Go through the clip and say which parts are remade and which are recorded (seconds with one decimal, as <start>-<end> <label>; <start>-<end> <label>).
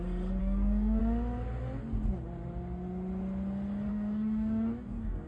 0.0-0.4 recorded; 0.4-1.0 remade; 1.0-3.9 recorded; 3.9-5.3 remade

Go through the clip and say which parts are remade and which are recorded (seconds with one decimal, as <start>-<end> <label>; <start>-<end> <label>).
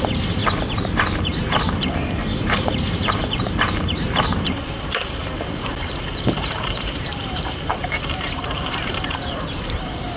0.0-0.4 remade; 0.4-1.2 recorded; 1.2-10.2 remade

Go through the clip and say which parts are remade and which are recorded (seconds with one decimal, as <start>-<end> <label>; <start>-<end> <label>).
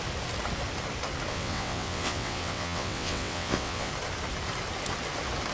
0.0-1.3 recorded; 1.3-3.9 remade; 3.9-5.5 recorded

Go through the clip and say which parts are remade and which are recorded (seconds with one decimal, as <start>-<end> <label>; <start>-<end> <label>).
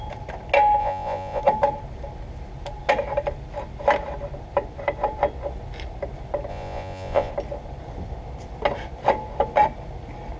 0.0-0.8 recorded; 0.8-1.4 remade; 1.4-6.5 recorded; 6.5-7.3 remade; 7.3-10.4 recorded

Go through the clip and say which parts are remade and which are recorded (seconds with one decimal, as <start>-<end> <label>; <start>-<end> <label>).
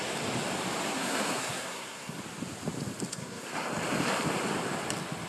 0.0-0.9 recorded; 0.9-2.2 remade; 2.2-3.1 recorded; 3.1-3.5 remade; 3.5-5.3 recorded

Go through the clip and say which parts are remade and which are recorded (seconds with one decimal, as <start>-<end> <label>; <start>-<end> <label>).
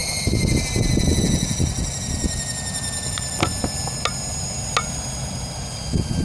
0.0-6.2 recorded